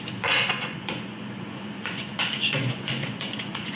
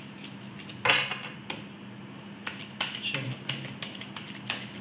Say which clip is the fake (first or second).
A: first